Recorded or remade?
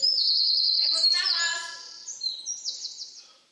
recorded